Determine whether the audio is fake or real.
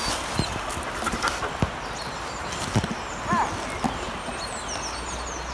real